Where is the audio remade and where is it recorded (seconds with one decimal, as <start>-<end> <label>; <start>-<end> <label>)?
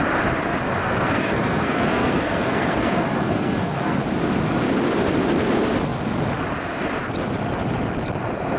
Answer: 0.0-0.8 recorded; 0.8-4.0 remade; 4.0-8.6 recorded